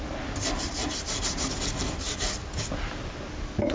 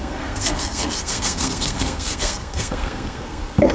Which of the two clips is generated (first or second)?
second